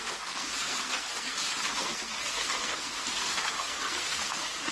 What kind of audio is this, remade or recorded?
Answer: remade